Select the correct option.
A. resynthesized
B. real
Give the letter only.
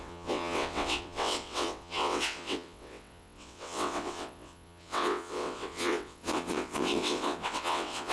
A